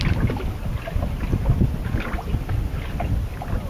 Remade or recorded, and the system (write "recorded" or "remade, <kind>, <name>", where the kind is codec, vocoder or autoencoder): recorded